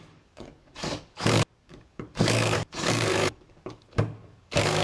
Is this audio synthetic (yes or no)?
yes